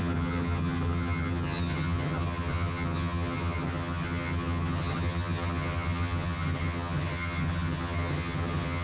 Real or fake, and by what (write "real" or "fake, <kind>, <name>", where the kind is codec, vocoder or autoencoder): fake, vocoder, HiFi-GAN